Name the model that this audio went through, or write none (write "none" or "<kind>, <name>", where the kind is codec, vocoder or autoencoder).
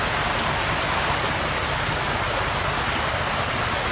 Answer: none